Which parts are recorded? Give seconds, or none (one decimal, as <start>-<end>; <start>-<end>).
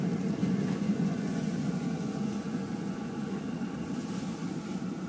0.0-0.4; 3.5-5.1